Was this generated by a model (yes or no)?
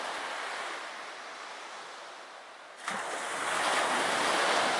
no